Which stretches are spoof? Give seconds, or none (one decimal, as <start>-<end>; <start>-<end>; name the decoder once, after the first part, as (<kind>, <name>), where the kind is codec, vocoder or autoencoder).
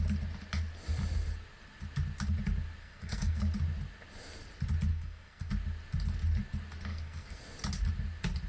2.8-3.4 (codec, SNAC); 4.9-5.5; 6.9-7.4